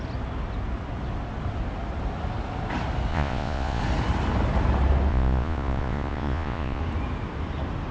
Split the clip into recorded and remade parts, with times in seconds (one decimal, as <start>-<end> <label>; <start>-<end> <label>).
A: 0.0-3.1 recorded; 3.1-3.8 remade; 3.8-5.1 recorded; 5.1-6.8 remade; 6.8-7.9 recorded